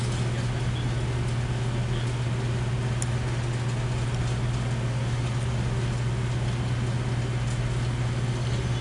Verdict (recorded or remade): recorded